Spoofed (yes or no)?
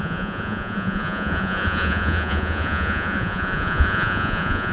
yes